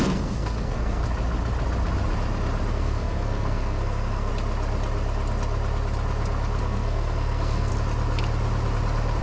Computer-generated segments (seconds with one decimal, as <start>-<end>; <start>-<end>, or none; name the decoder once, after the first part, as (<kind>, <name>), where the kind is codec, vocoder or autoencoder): 0.0-1.0 (codec, SNAC); 2.7-4.3; 6.6-7.7